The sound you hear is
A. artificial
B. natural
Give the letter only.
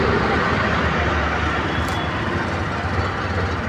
B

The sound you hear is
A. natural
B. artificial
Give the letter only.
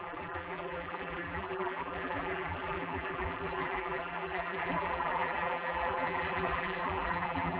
B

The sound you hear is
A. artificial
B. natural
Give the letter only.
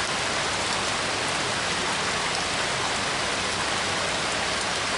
B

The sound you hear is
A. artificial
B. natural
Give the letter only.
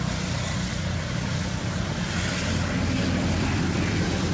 B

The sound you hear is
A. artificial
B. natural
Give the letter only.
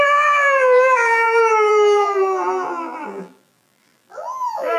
A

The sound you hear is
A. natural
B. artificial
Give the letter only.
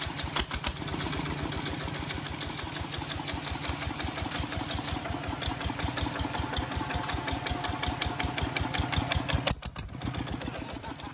A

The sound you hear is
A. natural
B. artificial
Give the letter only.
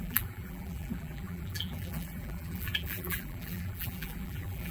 B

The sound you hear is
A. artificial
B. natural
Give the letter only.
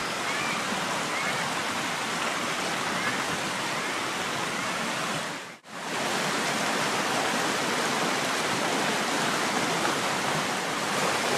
B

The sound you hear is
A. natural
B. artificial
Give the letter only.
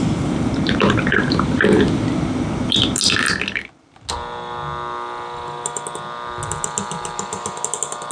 A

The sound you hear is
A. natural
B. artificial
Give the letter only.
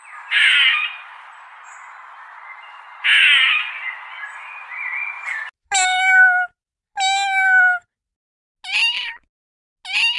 A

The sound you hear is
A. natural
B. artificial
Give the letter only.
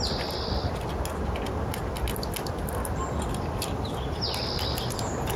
A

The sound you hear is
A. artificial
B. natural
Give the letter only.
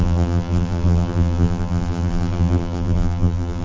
A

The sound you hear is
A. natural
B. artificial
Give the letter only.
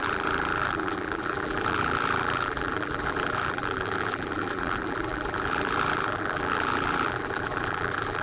B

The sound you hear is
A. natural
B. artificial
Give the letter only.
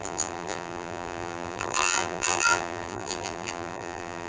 B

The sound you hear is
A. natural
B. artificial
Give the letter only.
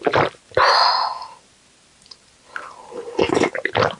A